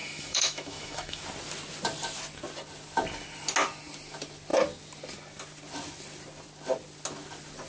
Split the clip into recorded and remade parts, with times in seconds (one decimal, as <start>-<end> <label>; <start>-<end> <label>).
0.0-1.2 remade; 1.2-7.7 recorded